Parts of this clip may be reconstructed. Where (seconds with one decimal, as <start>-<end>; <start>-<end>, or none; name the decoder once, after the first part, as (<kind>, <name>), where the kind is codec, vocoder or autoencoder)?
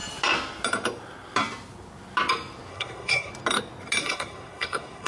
2.7-3.3 (codec, SNAC); 4.0-5.1